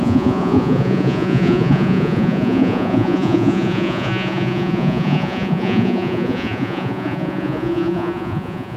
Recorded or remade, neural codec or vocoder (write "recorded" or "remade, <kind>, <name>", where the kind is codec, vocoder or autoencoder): remade, vocoder, Vocos